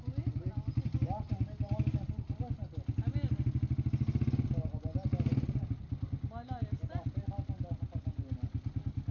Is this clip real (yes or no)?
yes